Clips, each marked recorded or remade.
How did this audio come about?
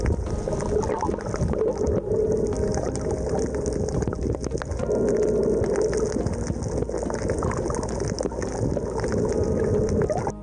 recorded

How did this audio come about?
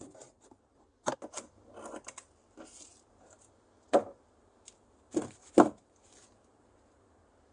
recorded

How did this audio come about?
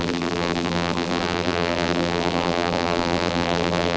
remade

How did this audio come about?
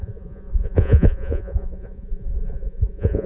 remade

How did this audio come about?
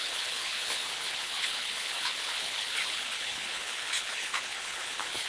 remade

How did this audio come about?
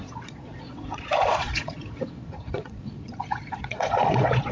remade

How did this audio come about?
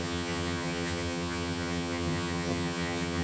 remade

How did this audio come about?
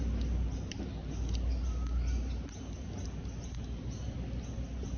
recorded